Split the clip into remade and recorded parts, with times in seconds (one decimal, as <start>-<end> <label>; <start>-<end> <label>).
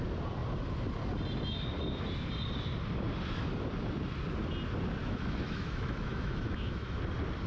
0.0-5.0 recorded; 5.0-7.0 remade; 7.0-7.5 recorded